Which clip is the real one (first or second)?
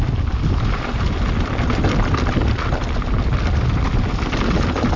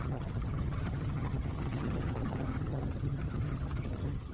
first